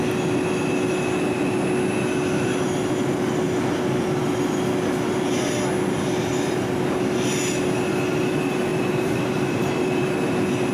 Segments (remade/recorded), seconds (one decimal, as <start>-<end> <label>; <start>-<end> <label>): 0.0-8.7 recorded; 8.7-10.1 remade; 10.1-10.7 recorded